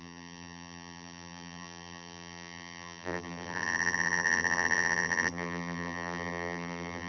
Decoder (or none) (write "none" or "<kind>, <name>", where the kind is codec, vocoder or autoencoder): vocoder, BigVGAN v2